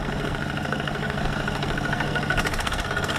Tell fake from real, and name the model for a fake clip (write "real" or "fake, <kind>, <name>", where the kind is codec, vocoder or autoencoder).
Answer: fake, codec, SNAC